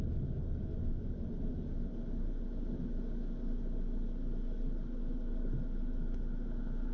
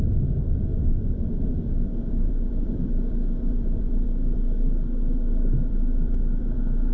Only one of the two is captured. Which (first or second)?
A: first